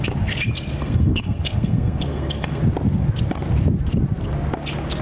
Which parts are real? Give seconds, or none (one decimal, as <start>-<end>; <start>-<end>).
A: 0.0-0.8; 2.6-5.0